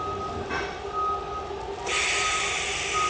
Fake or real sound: real